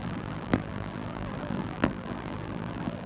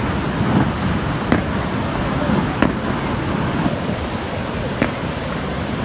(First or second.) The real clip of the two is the second